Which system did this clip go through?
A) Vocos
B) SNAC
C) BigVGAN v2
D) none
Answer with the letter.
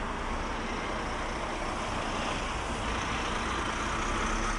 D